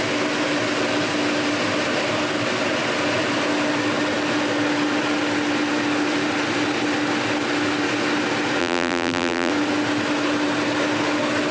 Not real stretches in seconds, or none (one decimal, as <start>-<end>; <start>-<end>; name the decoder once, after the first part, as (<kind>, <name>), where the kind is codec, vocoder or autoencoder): 8.6-9.5 (vocoder, BigVGAN v2)